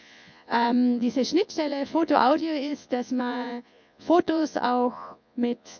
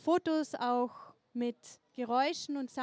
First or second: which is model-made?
first